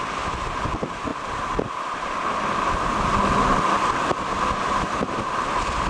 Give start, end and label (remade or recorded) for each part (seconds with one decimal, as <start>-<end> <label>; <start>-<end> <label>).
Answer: 0.0-5.9 recorded